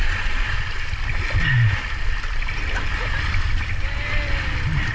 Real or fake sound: real